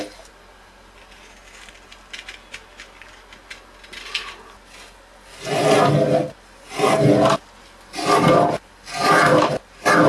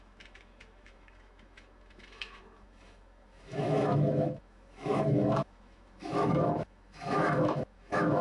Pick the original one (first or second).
first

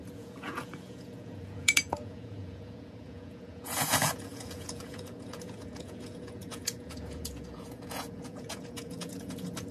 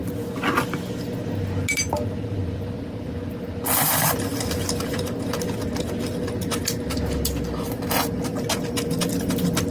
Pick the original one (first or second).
second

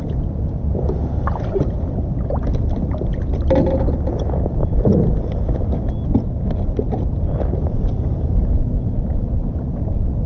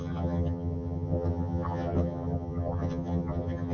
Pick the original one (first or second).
first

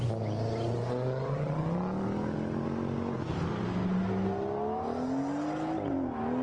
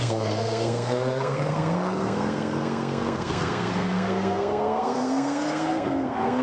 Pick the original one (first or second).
first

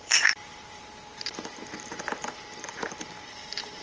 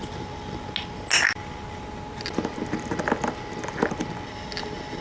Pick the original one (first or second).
second